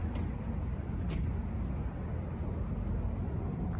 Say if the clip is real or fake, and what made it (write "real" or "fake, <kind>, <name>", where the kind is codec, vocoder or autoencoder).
real